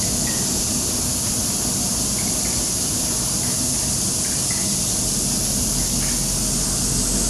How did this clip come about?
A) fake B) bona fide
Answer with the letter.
B